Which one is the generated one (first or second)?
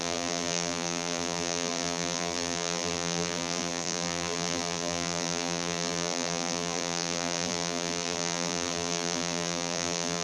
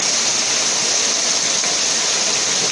first